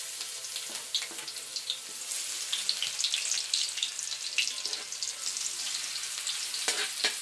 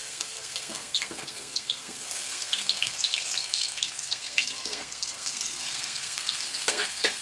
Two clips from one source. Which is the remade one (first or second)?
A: second